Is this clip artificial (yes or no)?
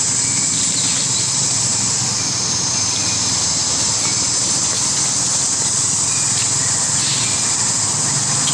no